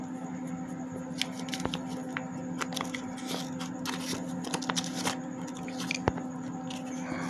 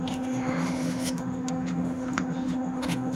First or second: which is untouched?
first